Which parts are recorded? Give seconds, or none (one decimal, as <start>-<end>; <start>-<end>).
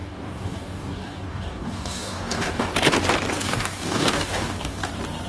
2.7-3.3; 4.8-5.3